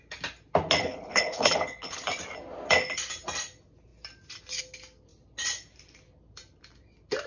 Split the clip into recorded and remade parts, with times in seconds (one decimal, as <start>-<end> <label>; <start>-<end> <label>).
0.0-0.8 recorded; 0.8-2.0 remade; 2.0-7.3 recorded